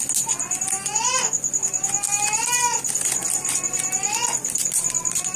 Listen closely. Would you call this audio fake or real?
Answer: real